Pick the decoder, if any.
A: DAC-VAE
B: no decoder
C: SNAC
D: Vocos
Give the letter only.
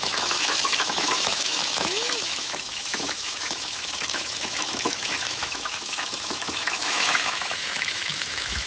A